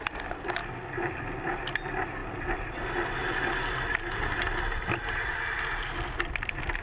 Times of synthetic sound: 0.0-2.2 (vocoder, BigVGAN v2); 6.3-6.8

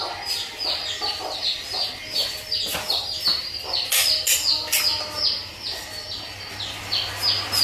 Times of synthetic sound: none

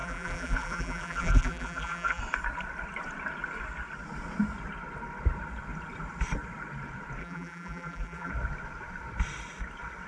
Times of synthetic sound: 0.0-2.2 (vocoder, BigVGAN v2); 7.2-8.3